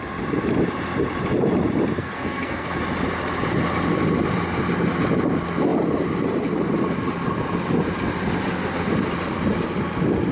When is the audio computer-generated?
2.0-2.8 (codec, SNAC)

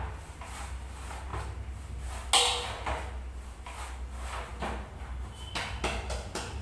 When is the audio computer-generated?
none

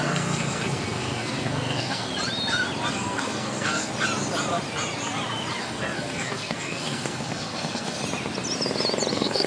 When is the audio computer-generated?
0.0-2.1 (codec, SNAC); 2.9-3.9; 5.6-8.0; 9.1-9.5

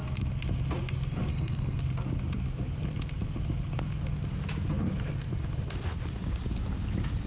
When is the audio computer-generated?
1.3-1.8 (codec, SNAC)